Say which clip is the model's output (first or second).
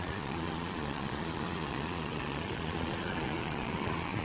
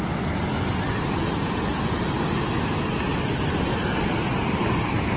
first